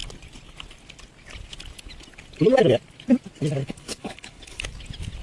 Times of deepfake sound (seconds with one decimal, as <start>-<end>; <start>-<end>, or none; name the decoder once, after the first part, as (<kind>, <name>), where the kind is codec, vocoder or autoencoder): 3.6-4.6 (codec, HILCodec)